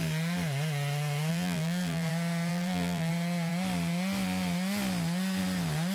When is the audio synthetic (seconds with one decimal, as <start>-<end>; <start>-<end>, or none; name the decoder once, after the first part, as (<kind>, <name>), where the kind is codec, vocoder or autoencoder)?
1.3-2.1 (vocoder, BigVGAN v2); 2.5-3.1